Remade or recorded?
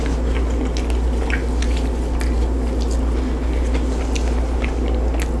recorded